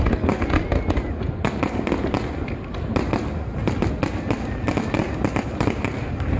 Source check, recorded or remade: recorded